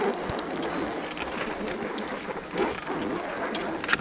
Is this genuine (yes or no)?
yes